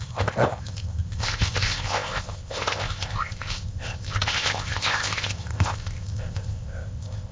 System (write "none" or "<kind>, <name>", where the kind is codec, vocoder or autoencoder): codec, ZipCodec